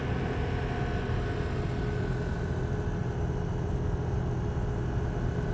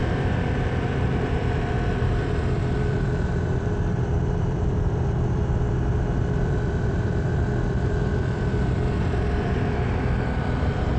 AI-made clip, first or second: second